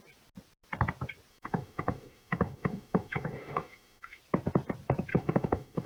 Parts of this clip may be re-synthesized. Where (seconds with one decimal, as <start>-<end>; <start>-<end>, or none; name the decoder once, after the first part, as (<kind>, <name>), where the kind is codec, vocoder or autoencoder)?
1.3-4.2 (autoencoder, DAC-VAE); 5.1-5.9